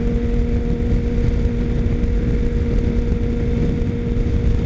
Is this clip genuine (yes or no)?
yes